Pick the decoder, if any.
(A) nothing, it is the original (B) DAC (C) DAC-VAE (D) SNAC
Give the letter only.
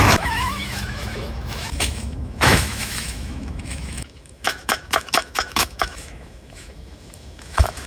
C